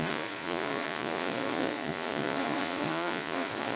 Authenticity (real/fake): fake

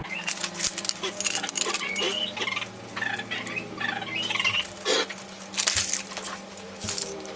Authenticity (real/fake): real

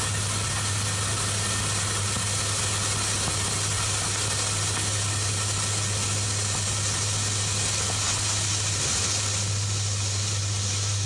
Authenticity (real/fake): real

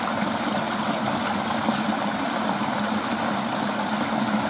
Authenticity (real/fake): real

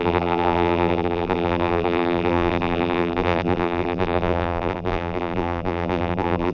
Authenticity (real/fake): fake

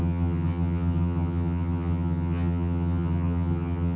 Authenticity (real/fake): fake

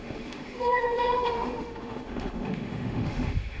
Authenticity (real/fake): fake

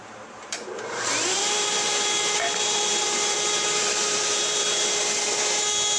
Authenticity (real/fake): fake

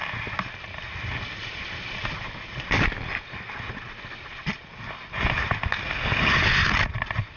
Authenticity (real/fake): real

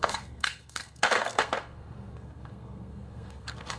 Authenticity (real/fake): fake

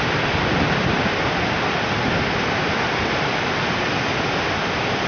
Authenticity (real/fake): real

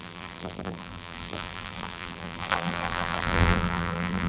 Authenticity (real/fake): fake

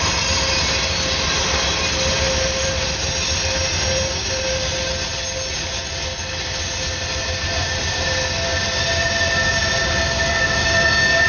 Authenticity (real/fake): real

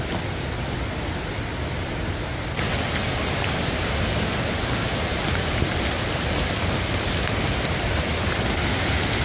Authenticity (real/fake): real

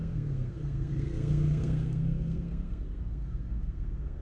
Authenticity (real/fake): fake